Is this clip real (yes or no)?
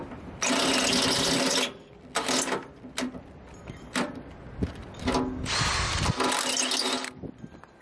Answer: yes